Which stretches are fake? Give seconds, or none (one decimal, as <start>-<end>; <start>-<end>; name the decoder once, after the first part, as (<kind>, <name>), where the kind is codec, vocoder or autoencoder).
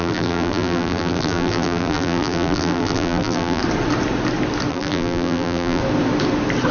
0.0-3.6 (vocoder, BigVGAN v2); 4.7-5.8